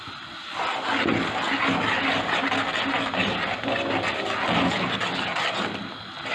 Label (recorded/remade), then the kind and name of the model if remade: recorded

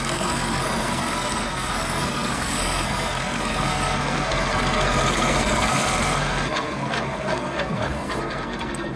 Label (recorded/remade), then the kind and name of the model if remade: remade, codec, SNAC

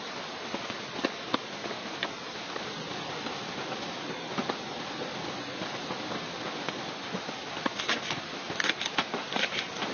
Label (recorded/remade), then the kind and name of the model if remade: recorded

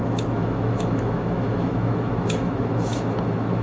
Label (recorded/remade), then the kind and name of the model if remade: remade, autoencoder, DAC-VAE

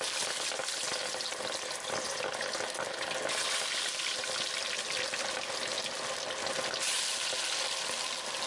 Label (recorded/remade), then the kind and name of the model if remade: recorded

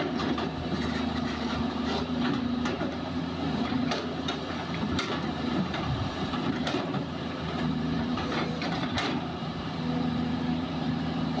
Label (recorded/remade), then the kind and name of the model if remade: remade, vocoder, BigVGAN v2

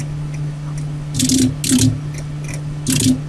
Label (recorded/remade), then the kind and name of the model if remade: recorded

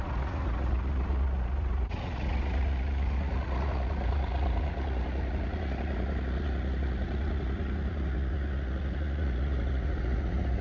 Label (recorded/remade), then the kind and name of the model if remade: remade, vocoder, Vocos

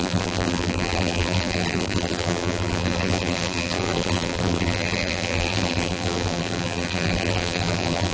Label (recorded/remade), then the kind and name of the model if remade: remade, vocoder, BigVGAN v2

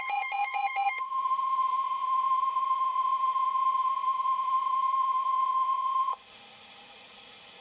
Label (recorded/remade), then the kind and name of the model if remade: remade, vocoder, Vocos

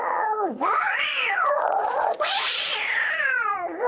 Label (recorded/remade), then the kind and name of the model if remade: remade, vocoder, Vocos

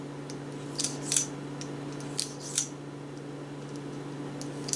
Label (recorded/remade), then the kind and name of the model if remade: recorded